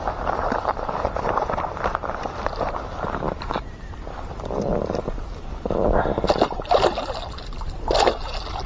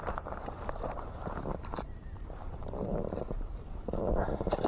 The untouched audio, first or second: first